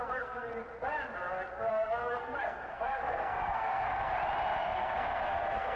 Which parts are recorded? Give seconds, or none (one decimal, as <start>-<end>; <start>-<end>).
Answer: 0.5-1.7; 4.1-4.6